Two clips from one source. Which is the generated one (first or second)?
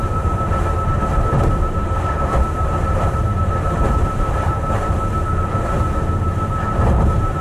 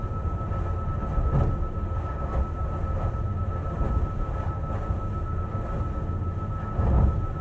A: first